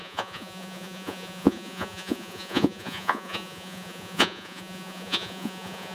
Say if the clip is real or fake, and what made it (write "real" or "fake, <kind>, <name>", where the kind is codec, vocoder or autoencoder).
fake, vocoder, Vocos